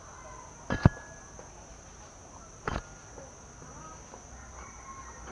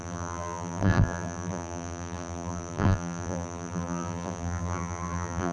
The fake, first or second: second